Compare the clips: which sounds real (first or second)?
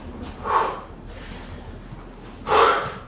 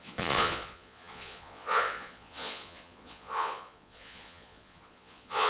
first